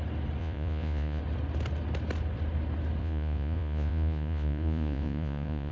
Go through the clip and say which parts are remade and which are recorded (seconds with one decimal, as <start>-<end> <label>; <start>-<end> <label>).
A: 0.0-0.4 recorded; 0.4-1.2 remade; 1.2-3.0 recorded; 3.0-5.7 remade